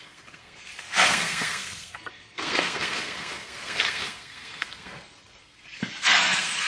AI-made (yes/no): yes